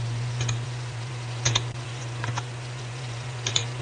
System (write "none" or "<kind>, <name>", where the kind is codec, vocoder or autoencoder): vocoder, Vocos